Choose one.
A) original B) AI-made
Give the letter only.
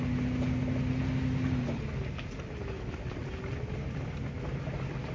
A